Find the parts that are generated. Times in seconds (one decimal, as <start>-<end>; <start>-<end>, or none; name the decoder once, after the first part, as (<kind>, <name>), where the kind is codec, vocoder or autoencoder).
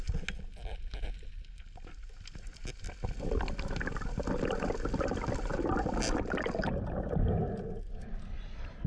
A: none